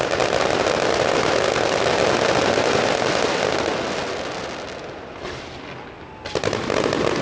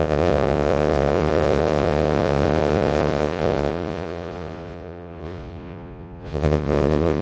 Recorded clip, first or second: first